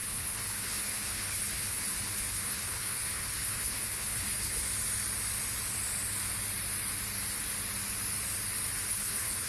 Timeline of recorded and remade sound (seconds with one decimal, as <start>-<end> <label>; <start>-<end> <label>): 0.0-4.6 remade; 4.6-8.9 recorded; 8.9-9.5 remade